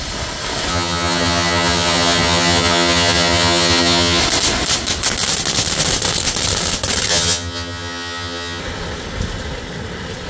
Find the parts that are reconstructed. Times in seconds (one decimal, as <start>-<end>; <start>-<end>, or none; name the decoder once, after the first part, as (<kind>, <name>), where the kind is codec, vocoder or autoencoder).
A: 0.7-4.2 (vocoder, HiFi-GAN); 7.1-8.6